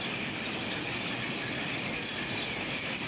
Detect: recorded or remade recorded